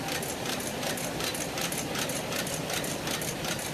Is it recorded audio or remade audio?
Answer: recorded